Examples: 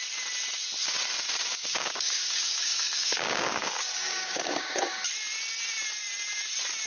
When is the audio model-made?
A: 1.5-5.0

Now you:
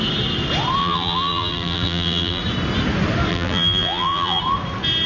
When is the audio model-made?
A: 0.8-2.4; 3.3-4.4

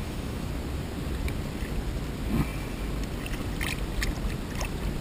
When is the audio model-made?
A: 0.0-0.5

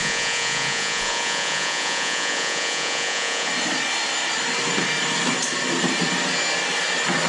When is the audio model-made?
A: 0.0-3.5

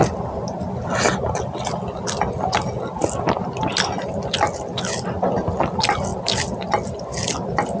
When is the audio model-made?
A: none

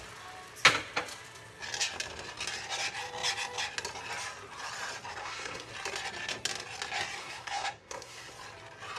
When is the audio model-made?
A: 5.2-5.7; 7.2-8.3

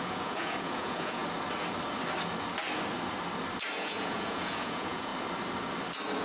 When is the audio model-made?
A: 0.0-1.2; 3.7-5.1

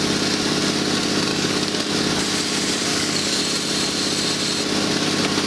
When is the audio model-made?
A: 1.3-1.9; 2.9-3.4